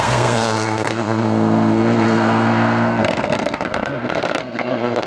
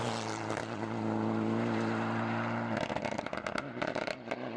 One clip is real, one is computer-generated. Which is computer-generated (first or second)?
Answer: first